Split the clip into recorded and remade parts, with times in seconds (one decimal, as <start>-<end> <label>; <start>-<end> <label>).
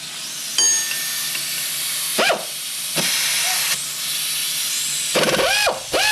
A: 0.0-2.1 recorded; 2.1-3.1 remade; 3.1-6.1 recorded